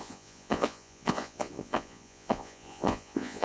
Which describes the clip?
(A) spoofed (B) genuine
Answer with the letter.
A